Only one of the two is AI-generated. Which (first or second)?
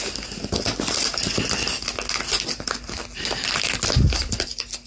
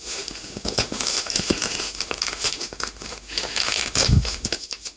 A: second